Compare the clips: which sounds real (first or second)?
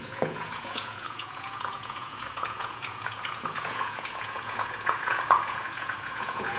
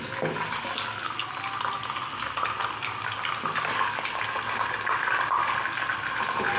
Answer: second